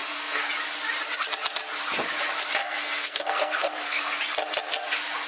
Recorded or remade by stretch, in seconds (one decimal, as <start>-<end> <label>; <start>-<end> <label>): 0.0-0.5 remade; 0.5-2.6 recorded; 2.6-4.2 remade; 4.2-5.3 recorded